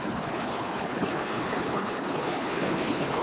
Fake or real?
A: fake